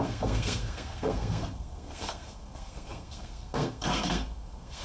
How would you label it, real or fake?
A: fake